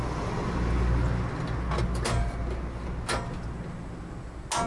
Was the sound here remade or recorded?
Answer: recorded